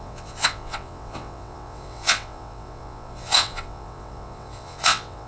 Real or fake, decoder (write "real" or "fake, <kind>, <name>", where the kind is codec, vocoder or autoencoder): fake, vocoder, WaveNeXt